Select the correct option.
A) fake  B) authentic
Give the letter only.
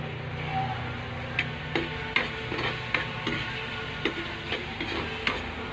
B